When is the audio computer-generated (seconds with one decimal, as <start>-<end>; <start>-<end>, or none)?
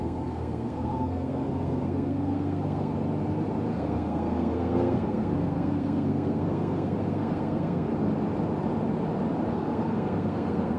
0.0-2.9; 3.7-7.9; 9.5-10.8